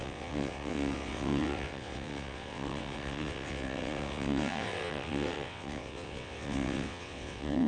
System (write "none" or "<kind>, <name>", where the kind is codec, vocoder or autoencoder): vocoder, WaveNeXt